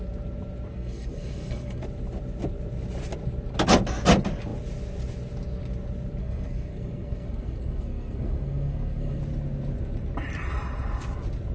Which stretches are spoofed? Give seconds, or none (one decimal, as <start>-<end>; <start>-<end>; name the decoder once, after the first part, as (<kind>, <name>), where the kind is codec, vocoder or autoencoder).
0.7-1.8 (codec, SNAC); 6.2-9.2